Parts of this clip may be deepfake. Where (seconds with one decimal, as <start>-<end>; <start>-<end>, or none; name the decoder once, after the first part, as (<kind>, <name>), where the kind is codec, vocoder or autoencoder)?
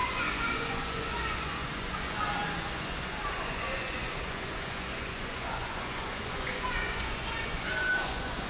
0.0-8.5 (vocoder, Vocos)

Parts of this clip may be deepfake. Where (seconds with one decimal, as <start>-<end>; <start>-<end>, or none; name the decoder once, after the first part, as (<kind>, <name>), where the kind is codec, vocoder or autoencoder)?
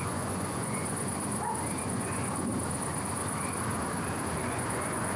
0.0-1.1 (vocoder, Vocos); 1.8-2.5; 4.3-5.2